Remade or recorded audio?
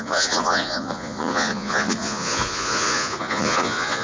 remade